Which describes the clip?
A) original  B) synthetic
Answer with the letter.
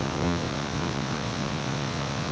B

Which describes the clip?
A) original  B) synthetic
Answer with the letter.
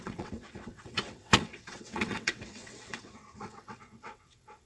B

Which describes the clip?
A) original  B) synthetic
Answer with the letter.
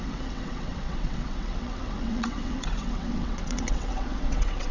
B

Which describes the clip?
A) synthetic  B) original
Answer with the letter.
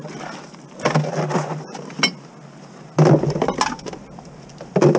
B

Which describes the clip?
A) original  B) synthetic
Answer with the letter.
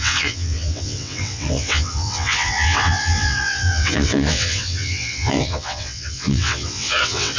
B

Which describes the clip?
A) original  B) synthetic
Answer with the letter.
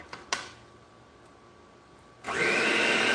A